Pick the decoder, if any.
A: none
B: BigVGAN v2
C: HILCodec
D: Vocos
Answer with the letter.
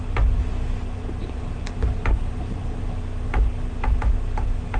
A